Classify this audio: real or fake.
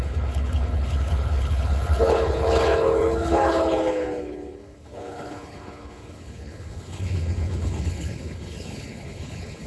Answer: fake